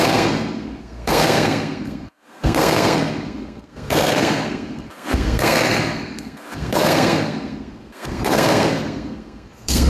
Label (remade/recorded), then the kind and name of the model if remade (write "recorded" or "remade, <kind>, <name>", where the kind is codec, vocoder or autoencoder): remade, codec, SNAC